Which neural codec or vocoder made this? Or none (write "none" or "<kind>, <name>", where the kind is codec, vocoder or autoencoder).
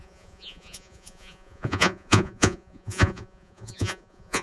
vocoder, Vocos